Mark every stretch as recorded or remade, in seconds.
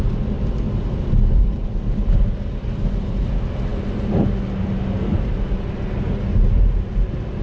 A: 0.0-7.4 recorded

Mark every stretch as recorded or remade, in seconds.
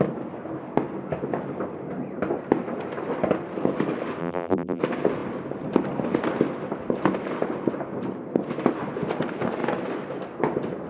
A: 0.0-4.2 recorded; 4.2-4.8 remade; 4.8-10.9 recorded